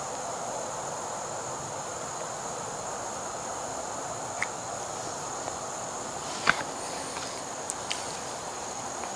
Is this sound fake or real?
fake